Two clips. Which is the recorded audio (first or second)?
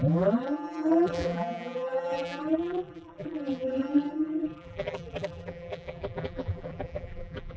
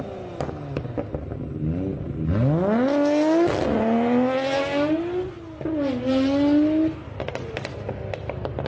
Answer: second